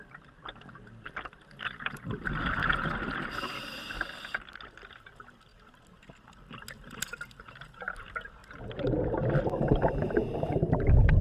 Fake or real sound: real